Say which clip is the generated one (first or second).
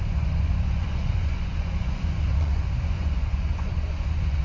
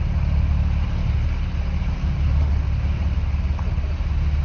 first